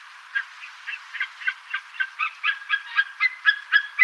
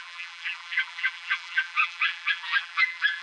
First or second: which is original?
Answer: first